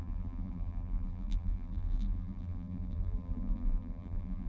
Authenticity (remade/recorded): remade